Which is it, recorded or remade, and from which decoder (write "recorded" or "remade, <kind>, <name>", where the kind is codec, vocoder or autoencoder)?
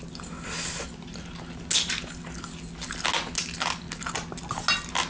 recorded